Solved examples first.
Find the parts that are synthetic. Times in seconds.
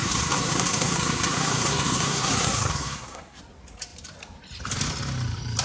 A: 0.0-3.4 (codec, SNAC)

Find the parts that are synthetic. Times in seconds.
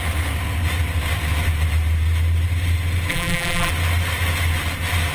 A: 3.1-3.7 (vocoder, BigVGAN v2)